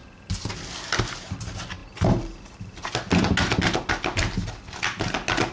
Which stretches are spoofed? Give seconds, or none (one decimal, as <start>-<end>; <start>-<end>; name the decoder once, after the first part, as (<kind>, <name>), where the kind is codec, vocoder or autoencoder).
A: 0.0-0.5 (vocoder, BigVGAN v2)